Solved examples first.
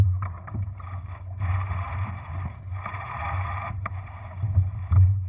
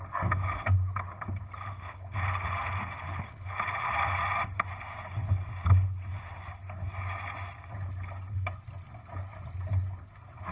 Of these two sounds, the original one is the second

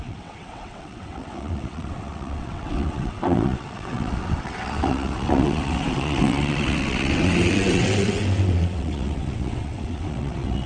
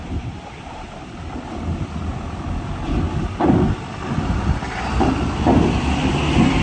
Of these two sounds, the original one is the second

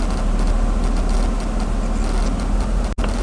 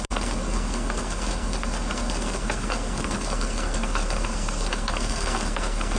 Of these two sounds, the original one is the first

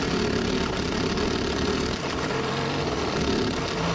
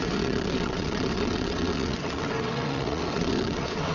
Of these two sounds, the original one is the first